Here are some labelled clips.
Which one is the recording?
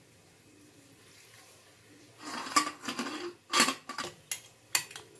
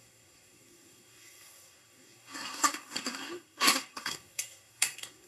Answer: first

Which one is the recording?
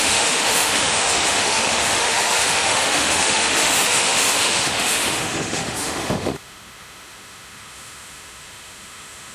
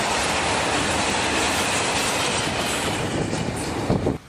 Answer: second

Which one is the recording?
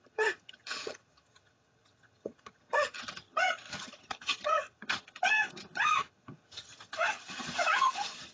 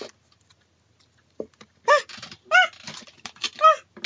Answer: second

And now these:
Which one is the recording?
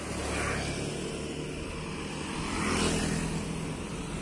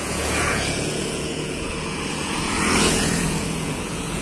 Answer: first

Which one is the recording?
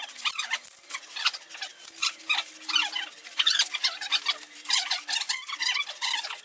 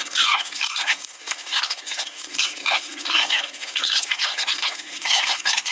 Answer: first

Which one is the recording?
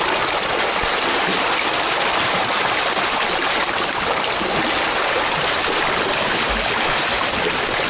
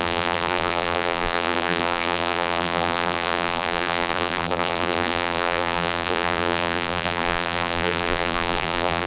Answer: first